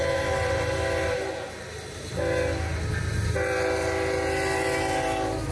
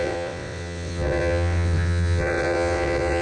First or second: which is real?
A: first